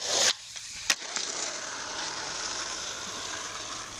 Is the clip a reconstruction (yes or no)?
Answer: yes